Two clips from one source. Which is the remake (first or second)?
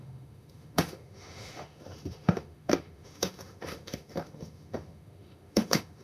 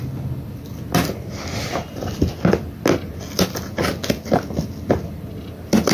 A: first